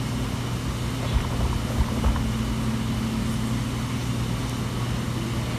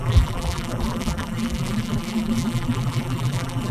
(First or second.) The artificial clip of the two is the second